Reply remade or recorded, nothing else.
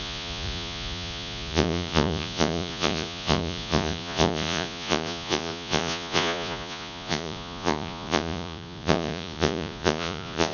remade